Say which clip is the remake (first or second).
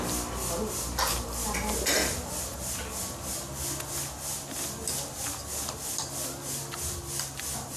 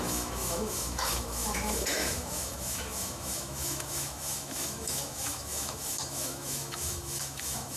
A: second